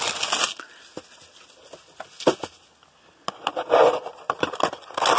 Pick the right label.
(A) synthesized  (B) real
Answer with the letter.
B